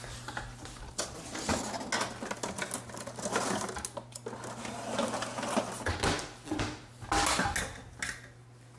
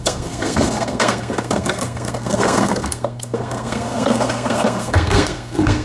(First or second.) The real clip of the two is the first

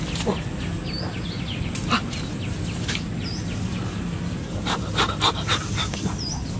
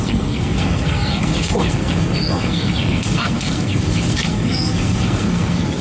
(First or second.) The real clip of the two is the first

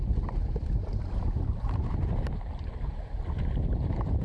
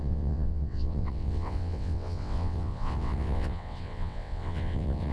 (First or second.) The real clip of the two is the first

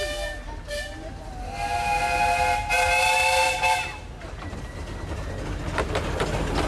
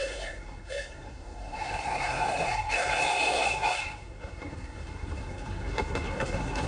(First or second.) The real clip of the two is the first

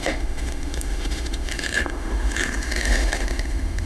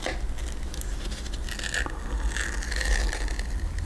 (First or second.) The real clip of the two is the second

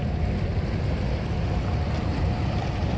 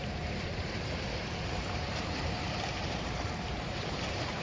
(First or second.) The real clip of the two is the first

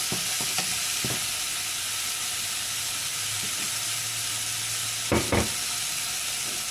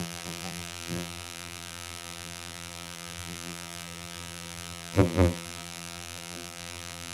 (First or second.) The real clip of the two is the first